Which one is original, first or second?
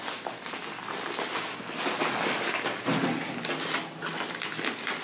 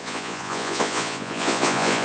first